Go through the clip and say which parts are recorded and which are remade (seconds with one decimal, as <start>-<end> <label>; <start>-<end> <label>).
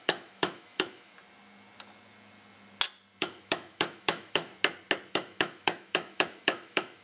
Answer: 0.0-1.1 remade; 1.1-3.2 recorded; 3.2-4.5 remade; 4.5-5.1 recorded; 5.1-7.0 remade